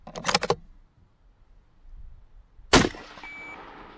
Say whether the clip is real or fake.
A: real